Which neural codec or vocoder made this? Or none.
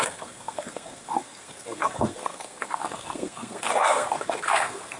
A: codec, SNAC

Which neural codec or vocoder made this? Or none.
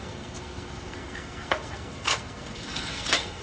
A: codec, SNAC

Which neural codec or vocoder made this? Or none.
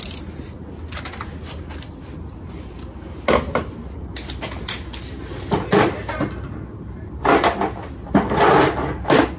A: none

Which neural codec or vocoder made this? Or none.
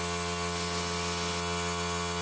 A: none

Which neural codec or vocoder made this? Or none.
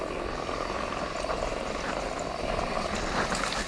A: none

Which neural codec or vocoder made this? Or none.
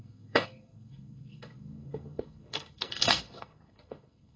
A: codec, SNAC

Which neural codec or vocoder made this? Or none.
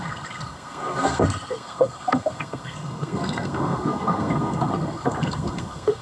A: codec, SNAC